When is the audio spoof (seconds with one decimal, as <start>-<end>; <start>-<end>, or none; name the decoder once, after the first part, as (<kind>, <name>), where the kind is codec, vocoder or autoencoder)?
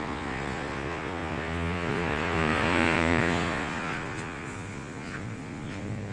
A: 0.0-6.1 (vocoder, Vocos)